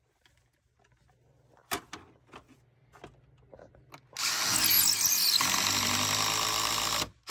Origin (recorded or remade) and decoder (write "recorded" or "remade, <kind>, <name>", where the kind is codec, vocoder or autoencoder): recorded